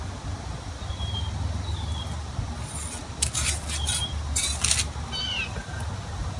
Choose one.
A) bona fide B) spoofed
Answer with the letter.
A